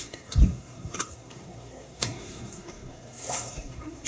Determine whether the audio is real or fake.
fake